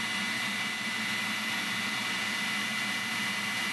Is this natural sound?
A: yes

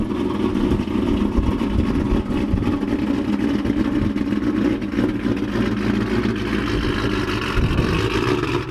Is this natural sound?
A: yes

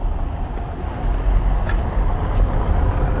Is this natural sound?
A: yes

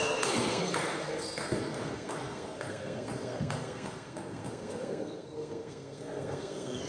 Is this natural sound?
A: no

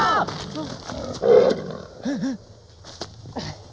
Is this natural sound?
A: yes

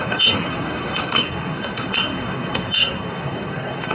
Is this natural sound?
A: no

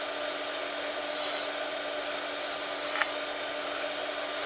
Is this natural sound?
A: yes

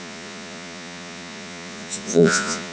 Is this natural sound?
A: no